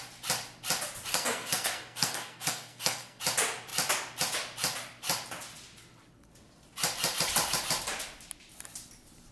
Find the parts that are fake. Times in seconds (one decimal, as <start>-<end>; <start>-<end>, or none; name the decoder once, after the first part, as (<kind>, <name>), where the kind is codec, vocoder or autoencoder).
1.1-3.2 (codec, SNAC)